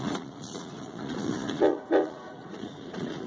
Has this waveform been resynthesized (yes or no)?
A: yes